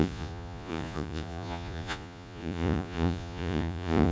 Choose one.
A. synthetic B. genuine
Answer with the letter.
A